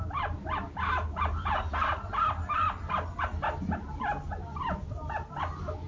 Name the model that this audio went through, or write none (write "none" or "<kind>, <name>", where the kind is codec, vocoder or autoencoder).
none